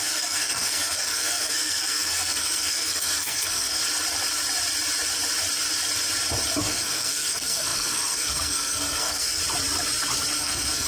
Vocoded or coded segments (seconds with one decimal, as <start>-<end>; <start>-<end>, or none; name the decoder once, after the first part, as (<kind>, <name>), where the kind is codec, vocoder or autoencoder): 0.0-3.8 (codec, SNAC); 6.6-9.4; 10.4-10.9